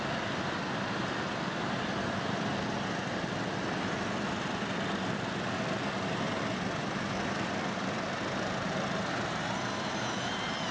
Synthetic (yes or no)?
no